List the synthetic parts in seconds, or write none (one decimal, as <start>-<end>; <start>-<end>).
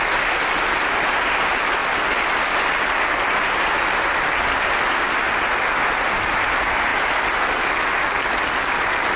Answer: none